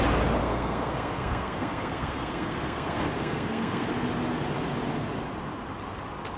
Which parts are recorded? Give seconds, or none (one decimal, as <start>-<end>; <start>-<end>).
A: 0.0-0.4; 3.9-6.4